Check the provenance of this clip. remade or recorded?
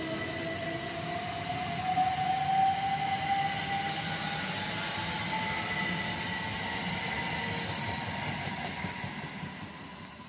recorded